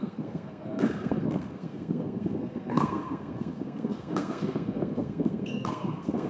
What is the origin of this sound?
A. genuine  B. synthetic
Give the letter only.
B